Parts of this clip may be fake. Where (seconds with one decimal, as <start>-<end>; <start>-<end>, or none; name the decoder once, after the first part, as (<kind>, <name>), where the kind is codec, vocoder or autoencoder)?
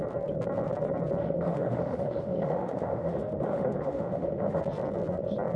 1.2-4.6 (autoencoder, DAC-VAE)